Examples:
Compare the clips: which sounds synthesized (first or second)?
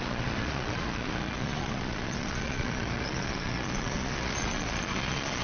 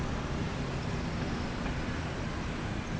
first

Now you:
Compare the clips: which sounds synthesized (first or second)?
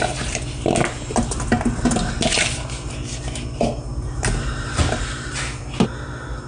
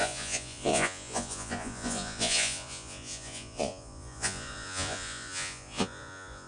second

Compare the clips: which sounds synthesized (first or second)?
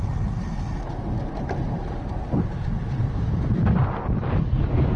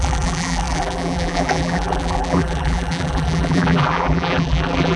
second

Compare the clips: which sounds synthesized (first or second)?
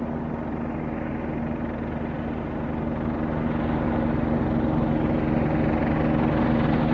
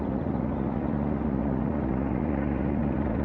second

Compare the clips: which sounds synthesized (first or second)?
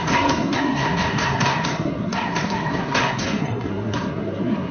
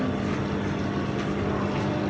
first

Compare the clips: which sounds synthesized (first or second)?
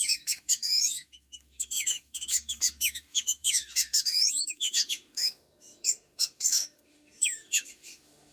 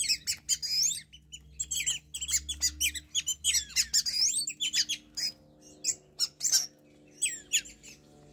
first